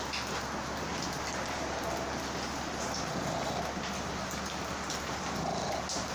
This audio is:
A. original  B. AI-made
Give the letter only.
A